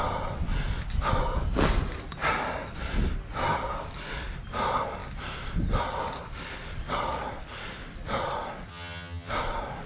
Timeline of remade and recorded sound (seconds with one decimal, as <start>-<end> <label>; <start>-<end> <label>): 0.0-8.7 recorded; 8.7-9.3 remade; 9.3-9.9 recorded